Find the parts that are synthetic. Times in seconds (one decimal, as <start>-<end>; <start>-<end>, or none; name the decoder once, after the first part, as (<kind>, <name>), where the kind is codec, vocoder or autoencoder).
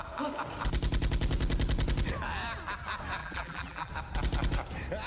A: 3.2-3.9 (vocoder, BigVGAN v2)